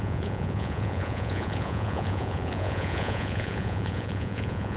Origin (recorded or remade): remade